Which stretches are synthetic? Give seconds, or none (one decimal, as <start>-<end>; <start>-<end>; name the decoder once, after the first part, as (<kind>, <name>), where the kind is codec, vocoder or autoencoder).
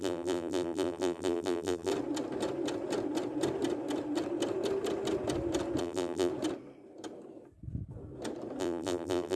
0.0-1.9 (vocoder, BigVGAN v2); 5.8-6.3; 8.6-9.4